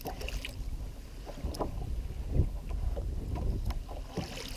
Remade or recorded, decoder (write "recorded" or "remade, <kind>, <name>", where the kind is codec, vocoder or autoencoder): recorded